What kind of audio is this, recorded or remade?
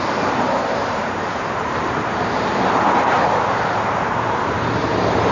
remade